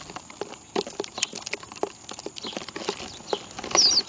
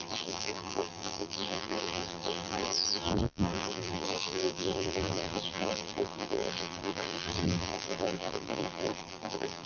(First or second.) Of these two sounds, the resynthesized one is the second